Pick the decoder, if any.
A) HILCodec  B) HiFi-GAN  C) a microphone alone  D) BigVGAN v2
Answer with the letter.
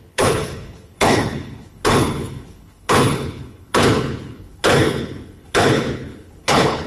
A